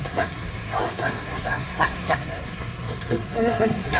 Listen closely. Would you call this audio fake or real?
fake